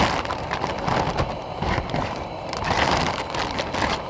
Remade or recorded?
recorded